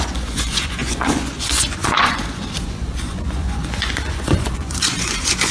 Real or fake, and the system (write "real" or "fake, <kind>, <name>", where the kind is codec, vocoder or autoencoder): fake, vocoder, Vocos